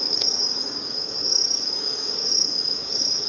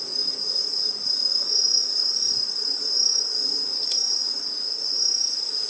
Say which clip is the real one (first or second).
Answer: second